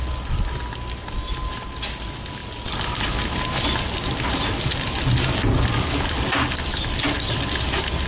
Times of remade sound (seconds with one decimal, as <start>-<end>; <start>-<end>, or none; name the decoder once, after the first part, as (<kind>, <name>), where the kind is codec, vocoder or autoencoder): none